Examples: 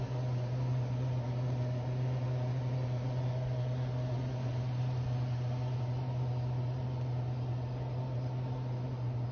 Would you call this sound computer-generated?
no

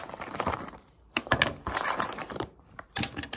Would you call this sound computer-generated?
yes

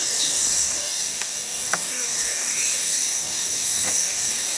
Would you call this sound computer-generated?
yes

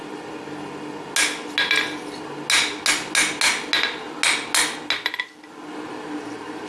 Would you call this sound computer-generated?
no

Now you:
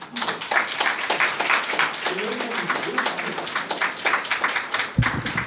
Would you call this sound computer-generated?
no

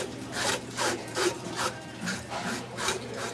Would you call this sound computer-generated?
yes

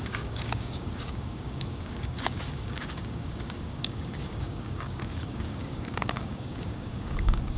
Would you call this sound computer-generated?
yes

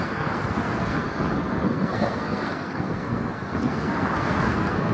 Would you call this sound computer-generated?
yes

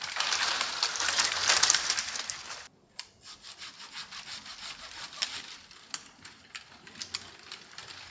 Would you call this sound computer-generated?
no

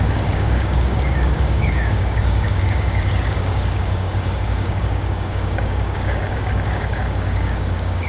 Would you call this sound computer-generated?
yes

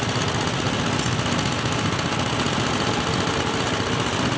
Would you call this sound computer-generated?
no